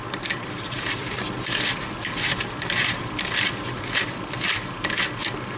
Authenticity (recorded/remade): recorded